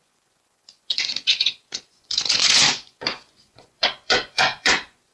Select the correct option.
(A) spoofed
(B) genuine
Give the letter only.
A